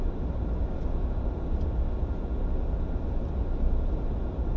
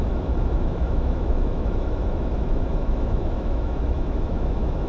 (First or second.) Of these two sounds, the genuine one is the first